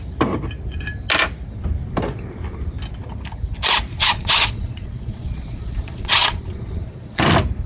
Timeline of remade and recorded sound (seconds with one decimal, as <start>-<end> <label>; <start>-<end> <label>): 0.0-3.9 recorded; 3.9-7.2 remade; 7.2-7.7 recorded